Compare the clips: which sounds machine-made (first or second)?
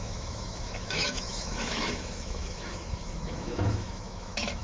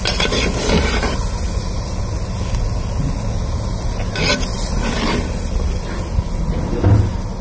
first